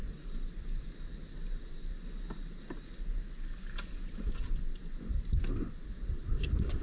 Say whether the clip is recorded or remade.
recorded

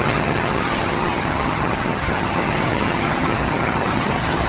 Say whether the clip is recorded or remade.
remade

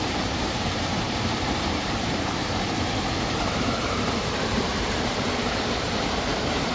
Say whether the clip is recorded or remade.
remade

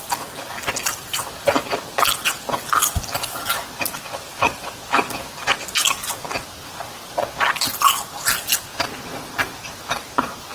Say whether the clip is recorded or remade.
recorded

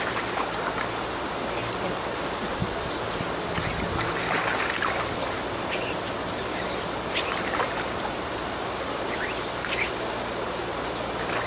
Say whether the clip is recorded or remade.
recorded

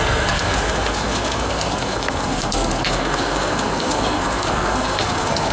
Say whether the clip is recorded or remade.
remade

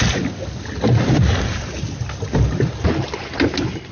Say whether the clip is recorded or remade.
recorded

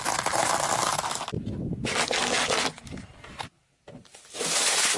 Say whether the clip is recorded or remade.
recorded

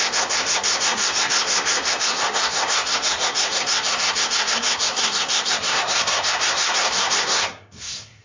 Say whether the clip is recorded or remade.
remade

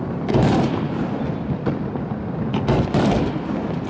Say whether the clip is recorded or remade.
recorded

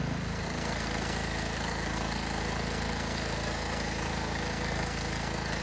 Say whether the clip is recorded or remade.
remade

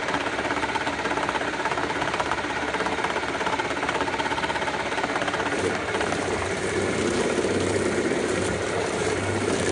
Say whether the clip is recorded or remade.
remade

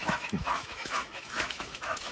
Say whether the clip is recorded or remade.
remade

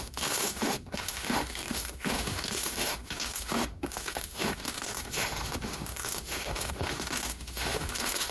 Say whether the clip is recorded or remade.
remade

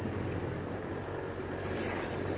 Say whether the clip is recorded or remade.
recorded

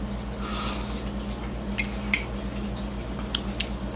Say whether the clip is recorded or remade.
recorded